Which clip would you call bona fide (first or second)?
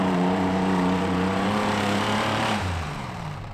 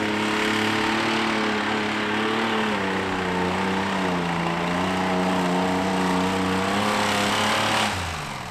second